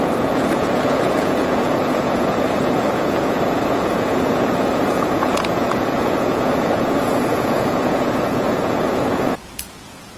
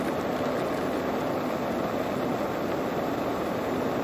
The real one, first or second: second